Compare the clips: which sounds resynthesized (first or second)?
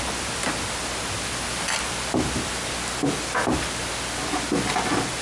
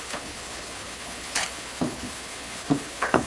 second